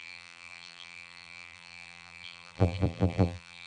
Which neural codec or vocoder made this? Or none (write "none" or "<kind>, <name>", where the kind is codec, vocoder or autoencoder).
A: vocoder, BigVGAN v2